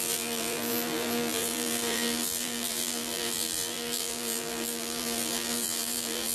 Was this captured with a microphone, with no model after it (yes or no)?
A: no